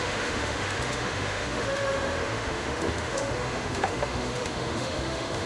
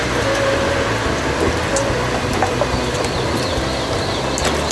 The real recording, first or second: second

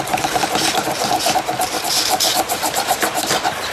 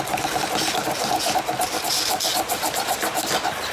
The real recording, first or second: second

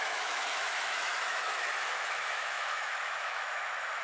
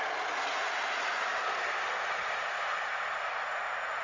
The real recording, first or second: second